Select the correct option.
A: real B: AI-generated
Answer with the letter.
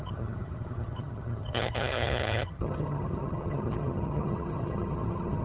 B